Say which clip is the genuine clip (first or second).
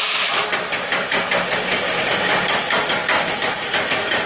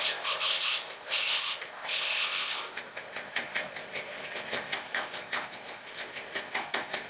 first